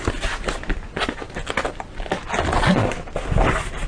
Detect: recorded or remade recorded